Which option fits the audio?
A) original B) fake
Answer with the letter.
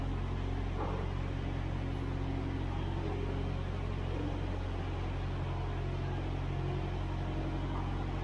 A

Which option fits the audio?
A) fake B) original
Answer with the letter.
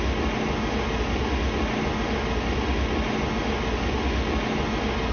B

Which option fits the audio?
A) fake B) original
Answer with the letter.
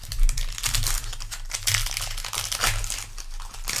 B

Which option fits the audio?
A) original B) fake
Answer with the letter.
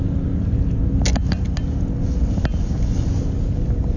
A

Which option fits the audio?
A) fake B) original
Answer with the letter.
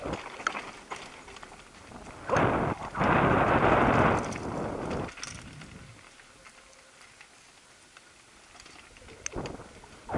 B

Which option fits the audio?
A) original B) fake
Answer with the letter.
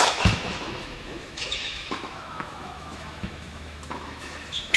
B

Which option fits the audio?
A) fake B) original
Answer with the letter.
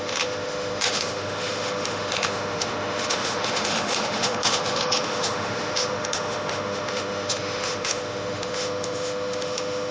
A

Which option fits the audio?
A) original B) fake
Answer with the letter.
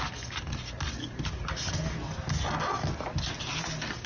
A